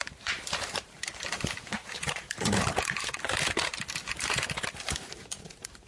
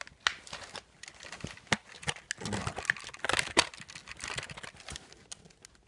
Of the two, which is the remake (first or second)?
first